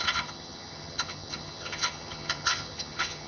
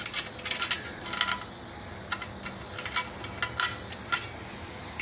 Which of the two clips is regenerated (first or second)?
first